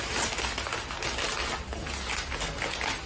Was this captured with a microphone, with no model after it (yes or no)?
yes